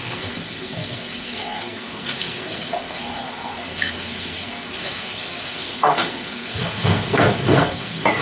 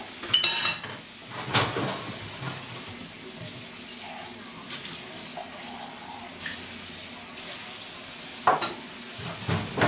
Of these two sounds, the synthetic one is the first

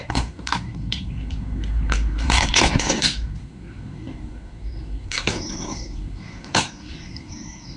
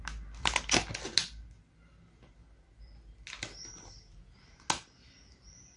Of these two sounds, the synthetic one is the first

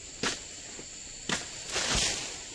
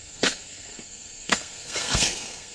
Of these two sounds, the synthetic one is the second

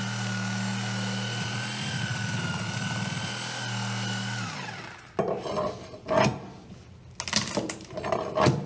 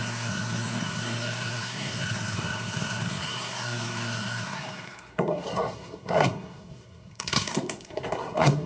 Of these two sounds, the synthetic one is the second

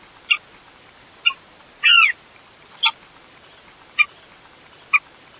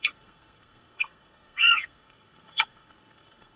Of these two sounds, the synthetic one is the second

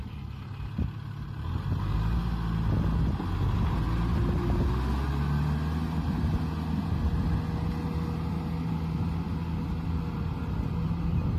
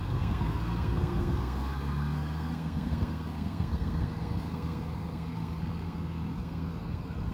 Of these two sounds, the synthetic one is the second